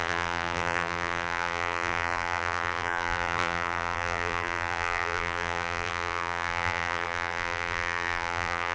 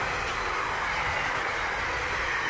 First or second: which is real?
second